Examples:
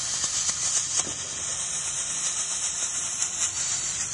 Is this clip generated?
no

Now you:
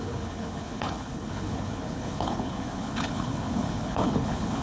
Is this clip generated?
yes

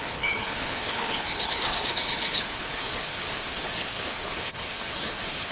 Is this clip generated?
yes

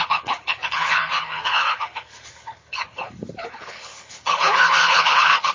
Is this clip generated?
yes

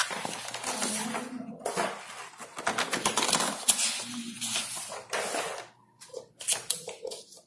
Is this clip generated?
no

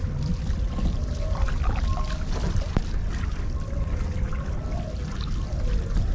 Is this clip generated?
no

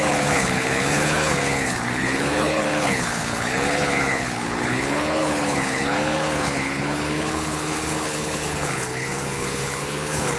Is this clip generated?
yes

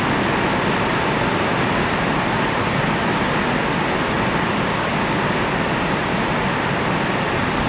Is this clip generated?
no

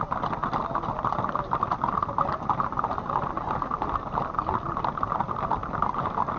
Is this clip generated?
no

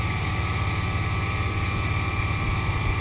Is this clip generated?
no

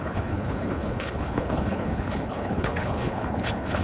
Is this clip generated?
yes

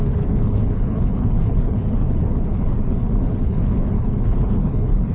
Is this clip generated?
yes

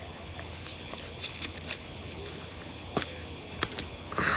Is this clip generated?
yes